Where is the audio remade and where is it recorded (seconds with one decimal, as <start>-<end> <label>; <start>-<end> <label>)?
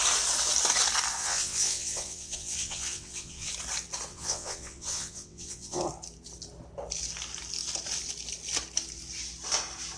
0.0-1.2 recorded; 1.2-3.5 remade; 3.5-4.1 recorded; 4.1-5.8 remade; 5.8-10.0 recorded